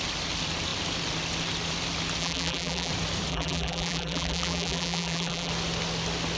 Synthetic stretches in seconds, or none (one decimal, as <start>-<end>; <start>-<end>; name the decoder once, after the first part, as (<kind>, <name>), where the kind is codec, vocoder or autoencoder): 2.2-2.9 (vocoder, BigVGAN v2); 3.3-5.5